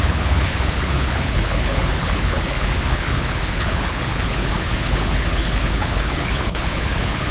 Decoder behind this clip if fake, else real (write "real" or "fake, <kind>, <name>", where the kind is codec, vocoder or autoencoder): fake, codec, HILCodec